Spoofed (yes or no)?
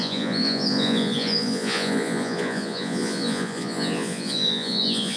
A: yes